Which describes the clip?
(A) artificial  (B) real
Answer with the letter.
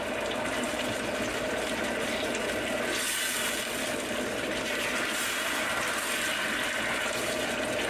B